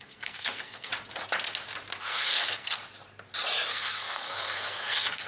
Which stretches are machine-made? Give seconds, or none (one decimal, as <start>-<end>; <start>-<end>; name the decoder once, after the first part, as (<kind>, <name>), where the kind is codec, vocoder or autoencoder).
0.0-0.9 (codec, SNAC); 2.0-2.8; 3.7-5.3